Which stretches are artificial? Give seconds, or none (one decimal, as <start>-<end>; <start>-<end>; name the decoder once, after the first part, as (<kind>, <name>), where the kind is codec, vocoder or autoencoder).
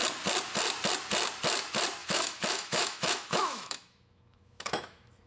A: 2.0-5.3 (autoencoder, DAC-VAE)